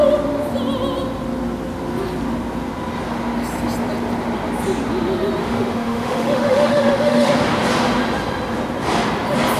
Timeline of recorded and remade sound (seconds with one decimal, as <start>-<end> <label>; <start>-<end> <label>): 0.0-5.4 recorded; 5.4-7.3 remade; 7.3-9.6 recorded